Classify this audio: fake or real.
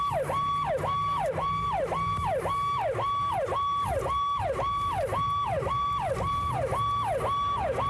real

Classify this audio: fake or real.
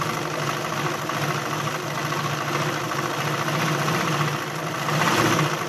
real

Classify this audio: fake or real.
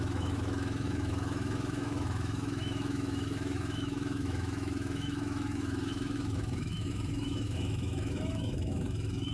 fake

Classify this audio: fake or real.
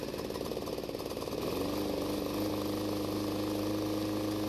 real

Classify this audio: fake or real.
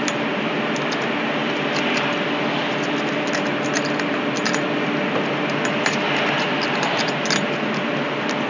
real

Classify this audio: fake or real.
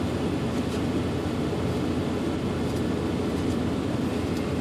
real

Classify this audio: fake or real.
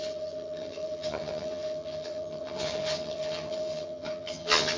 fake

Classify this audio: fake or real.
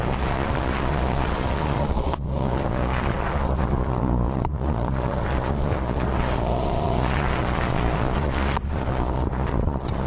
fake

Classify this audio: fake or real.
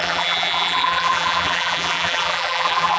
fake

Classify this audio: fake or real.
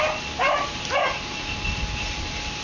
real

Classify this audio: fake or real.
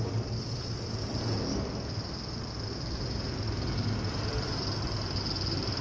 real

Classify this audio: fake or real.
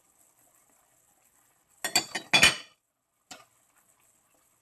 real